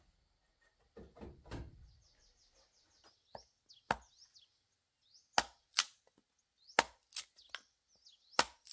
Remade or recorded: recorded